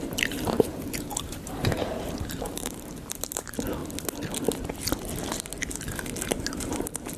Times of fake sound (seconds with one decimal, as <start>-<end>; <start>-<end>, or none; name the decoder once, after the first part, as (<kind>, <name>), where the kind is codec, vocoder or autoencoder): 0.0-3.8 (vocoder, BigVGAN v2); 6.2-7.2